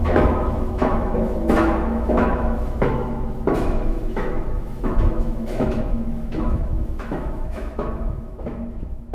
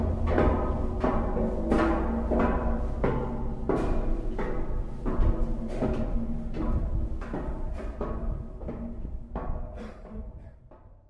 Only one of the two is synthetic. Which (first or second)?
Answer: first